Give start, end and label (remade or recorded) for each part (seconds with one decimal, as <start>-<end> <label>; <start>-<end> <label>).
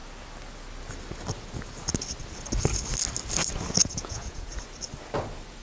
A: 0.0-3.8 recorded; 3.8-4.5 remade; 4.5-5.6 recorded